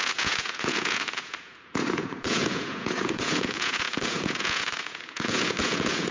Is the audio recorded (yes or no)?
no